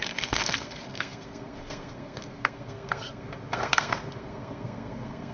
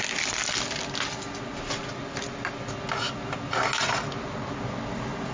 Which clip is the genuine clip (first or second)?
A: second